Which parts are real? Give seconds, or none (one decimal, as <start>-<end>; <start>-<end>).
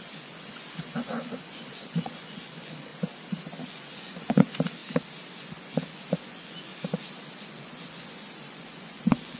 2.9-3.7; 4.8-5.4; 6.7-7.4